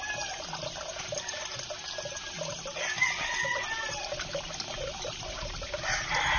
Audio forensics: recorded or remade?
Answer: recorded